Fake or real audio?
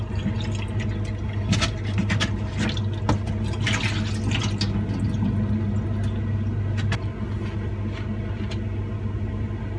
real